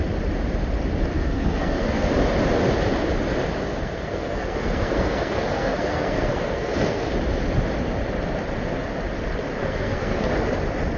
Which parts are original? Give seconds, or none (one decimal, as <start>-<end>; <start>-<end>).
0.0-1.1; 2.1-3.7; 7.1-9.6; 10.3-11.0